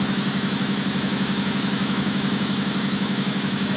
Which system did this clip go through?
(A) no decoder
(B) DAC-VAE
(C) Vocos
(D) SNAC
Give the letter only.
B